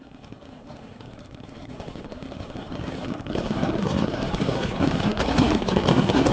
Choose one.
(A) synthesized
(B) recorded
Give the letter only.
A